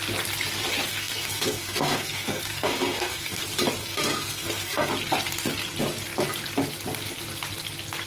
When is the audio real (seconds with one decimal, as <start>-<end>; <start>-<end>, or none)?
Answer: 0.0-0.9; 3.4-3.8; 4.9-8.1